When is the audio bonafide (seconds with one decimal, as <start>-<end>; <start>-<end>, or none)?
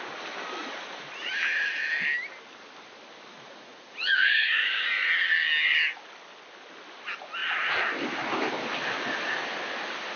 0.0-0.6; 1.3-3.3; 5.1-10.2